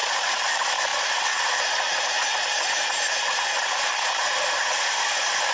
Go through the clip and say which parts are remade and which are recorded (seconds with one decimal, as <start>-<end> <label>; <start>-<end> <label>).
0.0-0.5 remade; 0.5-5.5 recorded